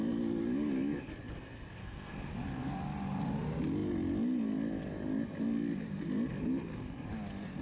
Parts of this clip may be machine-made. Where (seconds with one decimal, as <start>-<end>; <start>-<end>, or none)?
1.8-2.3